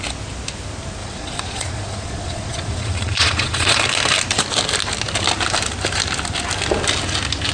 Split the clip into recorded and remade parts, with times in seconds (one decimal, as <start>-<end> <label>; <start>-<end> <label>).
0.0-1.0 recorded; 1.0-3.8 remade; 3.8-7.5 recorded